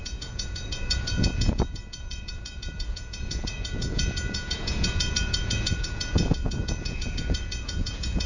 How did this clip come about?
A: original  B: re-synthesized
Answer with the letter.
B